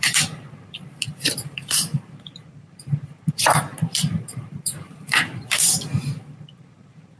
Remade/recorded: remade